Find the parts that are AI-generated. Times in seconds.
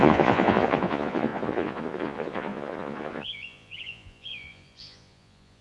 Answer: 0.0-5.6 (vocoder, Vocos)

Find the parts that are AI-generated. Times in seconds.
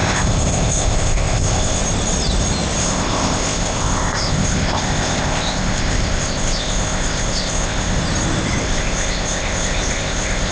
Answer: 0.0-1.8 (codec, ZipCodec); 2.8-8.0; 8.6-10.5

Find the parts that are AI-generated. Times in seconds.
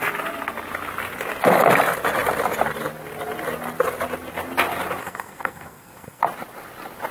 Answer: 5.0-6.2 (codec, SNAC)